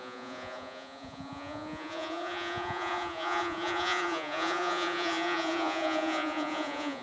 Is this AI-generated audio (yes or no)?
yes